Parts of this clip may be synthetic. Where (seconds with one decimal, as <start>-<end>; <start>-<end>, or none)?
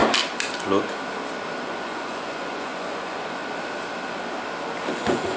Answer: 1.6-3.4; 4.9-5.4